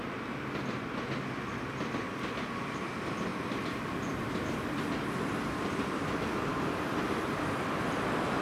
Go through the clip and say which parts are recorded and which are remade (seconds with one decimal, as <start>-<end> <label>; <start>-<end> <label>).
0.0-6.5 recorded; 6.5-7.0 remade; 7.0-8.4 recorded